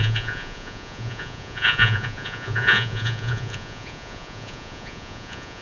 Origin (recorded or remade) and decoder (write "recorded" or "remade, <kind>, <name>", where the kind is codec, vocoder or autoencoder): remade, vocoder, Vocos